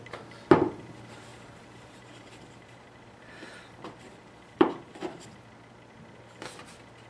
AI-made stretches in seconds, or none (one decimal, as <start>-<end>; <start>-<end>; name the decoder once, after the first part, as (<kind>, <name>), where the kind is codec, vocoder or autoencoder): 1.3-5.4 (vocoder, BigVGAN v2)

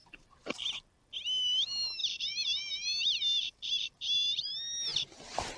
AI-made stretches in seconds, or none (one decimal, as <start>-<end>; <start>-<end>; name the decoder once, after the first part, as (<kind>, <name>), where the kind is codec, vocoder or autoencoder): 0.0-0.7 (vocoder, BigVGAN v2); 2.0-4.5

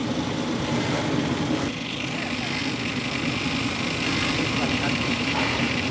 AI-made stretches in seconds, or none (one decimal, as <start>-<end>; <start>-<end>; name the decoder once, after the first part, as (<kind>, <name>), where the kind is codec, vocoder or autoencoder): 0.0-1.0 (vocoder, BigVGAN v2); 4.6-5.9

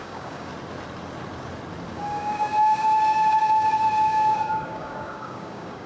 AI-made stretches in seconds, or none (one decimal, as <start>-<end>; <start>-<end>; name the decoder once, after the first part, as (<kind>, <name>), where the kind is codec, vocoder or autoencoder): 0.0-0.5 (codec, DAC); 1.9-5.9

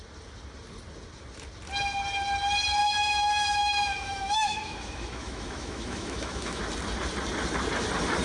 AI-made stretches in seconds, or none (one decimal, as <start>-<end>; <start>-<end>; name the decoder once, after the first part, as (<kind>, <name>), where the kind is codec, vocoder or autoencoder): 2.8-6.6 (autoencoder, DAC-VAE)

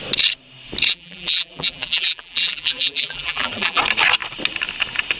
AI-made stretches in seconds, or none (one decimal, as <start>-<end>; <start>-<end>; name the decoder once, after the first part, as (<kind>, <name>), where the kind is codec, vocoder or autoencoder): 0.9-3.8 (vocoder, BigVGAN v2)